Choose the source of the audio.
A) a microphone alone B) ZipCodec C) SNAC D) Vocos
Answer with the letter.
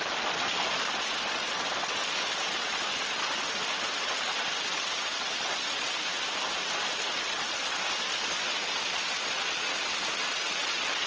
A